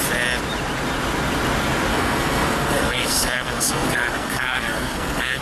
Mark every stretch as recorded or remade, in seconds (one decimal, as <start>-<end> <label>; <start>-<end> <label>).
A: 0.0-1.9 recorded; 1.9-5.4 remade